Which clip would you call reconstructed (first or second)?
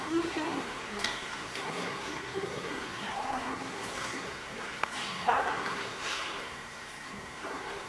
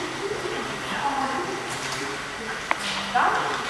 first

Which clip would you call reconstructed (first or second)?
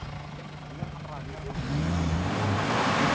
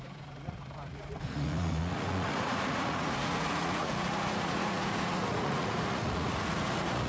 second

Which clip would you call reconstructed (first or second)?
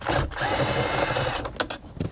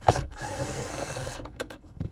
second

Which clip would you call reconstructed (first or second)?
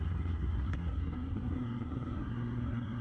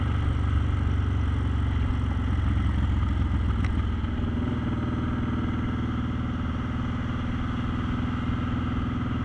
first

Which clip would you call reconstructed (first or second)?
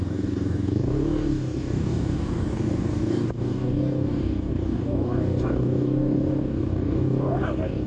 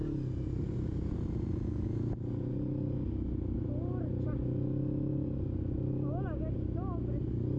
first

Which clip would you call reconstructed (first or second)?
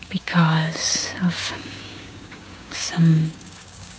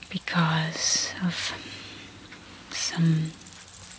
first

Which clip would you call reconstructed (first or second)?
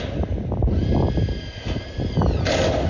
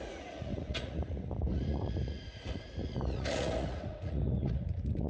second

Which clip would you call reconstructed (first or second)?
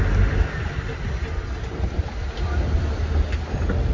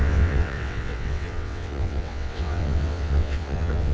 second